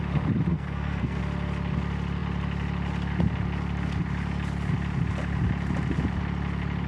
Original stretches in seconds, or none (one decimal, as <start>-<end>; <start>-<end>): 0.0-0.5; 1.2-6.9